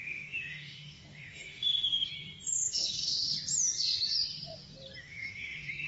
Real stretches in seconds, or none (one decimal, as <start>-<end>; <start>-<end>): 2.1-2.7; 3.3-5.0